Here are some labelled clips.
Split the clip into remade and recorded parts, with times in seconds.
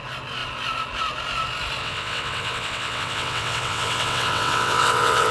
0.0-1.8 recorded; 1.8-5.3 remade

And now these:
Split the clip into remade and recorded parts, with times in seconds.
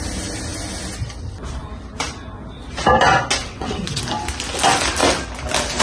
0.0-3.4 recorded; 3.4-4.0 remade; 4.0-5.8 recorded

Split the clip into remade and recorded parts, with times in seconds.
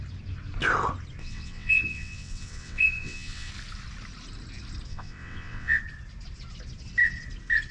0.0-1.2 recorded; 1.2-3.5 remade; 3.5-4.9 recorded; 4.9-5.8 remade; 5.8-7.7 recorded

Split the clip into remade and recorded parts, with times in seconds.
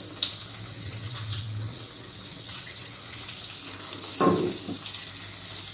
0.0-0.7 recorded; 0.7-3.5 remade; 3.5-5.7 recorded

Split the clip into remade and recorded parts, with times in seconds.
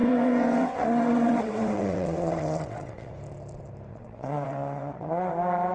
0.0-3.1 remade; 3.1-3.9 recorded; 3.9-5.3 remade; 5.3-5.7 recorded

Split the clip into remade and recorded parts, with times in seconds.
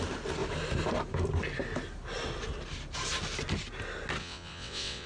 0.0-4.2 recorded; 4.2-5.1 remade